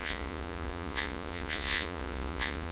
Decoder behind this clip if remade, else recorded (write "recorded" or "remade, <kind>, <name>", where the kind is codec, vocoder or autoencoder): remade, vocoder, Vocos